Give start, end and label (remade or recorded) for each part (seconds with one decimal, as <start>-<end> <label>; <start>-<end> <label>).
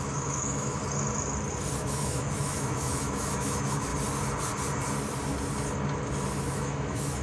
0.0-0.8 remade; 0.8-1.8 recorded; 1.8-3.9 remade; 3.9-6.4 recorded; 6.4-7.2 remade